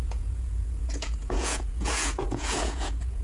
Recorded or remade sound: remade